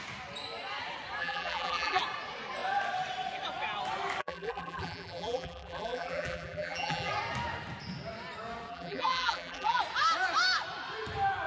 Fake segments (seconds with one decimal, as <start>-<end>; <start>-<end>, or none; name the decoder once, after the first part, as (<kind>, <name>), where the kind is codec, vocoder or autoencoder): 1.2-2.0 (vocoder, BigVGAN v2); 4.2-7.1; 8.7-9.8